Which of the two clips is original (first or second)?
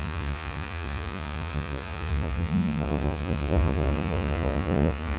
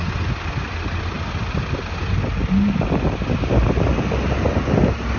second